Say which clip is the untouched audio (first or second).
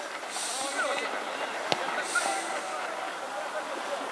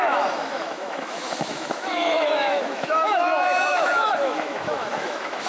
first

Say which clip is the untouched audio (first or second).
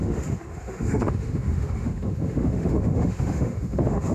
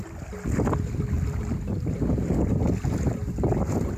second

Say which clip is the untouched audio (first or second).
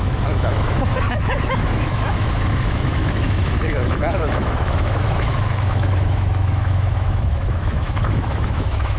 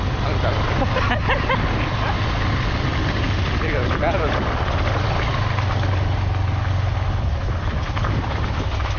second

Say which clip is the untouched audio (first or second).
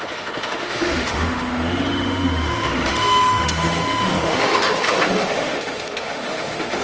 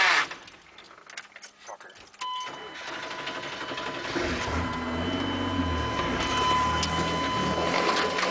second